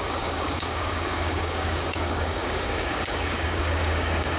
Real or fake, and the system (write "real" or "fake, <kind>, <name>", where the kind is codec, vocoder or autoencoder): fake, codec, DAC